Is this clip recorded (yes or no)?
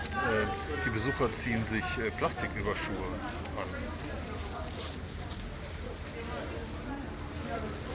yes